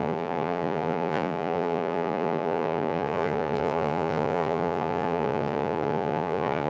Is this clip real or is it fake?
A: fake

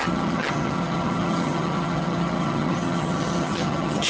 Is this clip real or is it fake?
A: fake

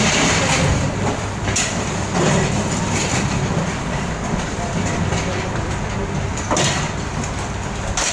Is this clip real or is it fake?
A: fake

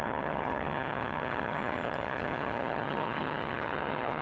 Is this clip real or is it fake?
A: fake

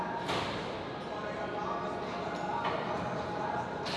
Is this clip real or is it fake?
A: real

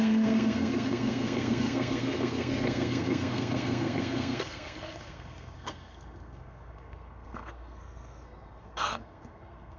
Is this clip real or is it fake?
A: fake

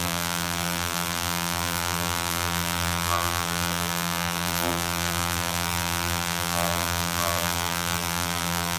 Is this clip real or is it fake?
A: fake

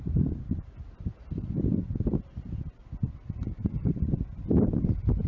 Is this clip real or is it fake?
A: fake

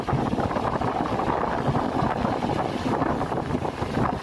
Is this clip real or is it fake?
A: real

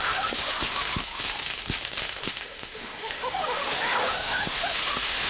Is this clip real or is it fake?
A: fake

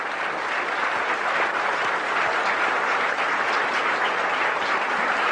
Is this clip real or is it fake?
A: real